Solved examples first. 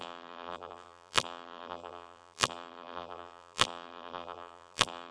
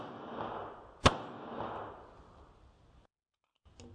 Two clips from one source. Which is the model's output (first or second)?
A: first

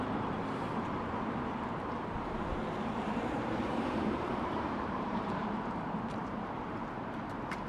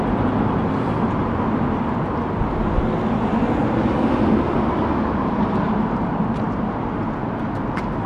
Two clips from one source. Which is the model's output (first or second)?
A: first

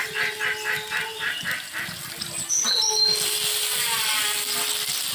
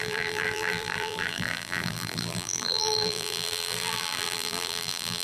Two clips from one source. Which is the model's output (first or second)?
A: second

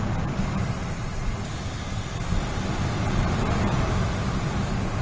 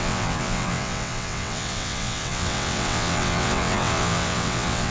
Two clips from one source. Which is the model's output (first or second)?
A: second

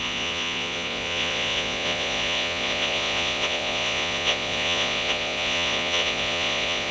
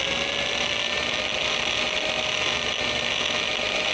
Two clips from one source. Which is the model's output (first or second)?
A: first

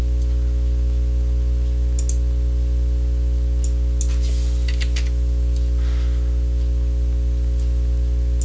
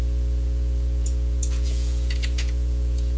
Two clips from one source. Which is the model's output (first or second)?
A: second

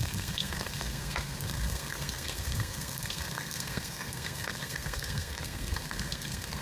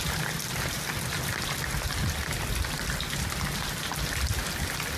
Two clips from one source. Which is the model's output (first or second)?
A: first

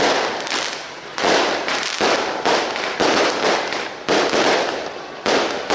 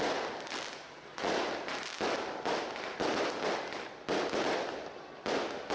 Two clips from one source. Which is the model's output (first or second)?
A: first